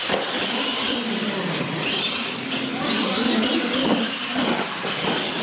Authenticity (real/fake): real